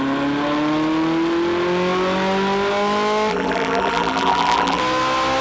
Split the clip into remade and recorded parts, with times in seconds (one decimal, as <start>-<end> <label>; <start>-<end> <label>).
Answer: 0.0-3.3 recorded; 3.3-4.8 remade; 4.8-5.4 recorded